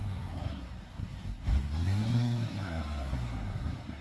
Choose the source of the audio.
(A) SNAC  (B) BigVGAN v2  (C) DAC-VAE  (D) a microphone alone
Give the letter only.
A